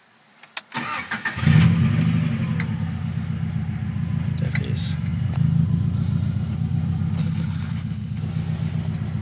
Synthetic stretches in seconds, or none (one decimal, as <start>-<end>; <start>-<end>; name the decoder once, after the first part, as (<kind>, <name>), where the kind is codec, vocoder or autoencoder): 7.2-8.2 (codec, HILCodec)